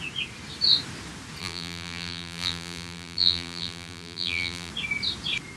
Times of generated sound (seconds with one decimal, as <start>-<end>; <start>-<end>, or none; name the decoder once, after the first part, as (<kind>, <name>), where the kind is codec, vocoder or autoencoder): 1.4-4.7 (vocoder, BigVGAN v2)